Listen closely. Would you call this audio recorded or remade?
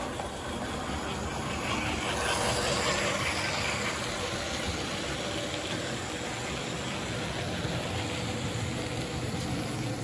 recorded